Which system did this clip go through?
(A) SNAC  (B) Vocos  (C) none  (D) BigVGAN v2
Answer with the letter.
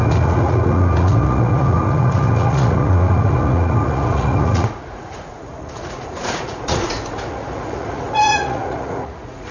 B